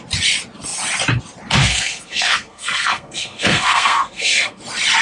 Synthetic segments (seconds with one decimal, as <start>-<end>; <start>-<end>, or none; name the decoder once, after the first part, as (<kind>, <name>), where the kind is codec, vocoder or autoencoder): 1.6-4.6 (codec, SNAC)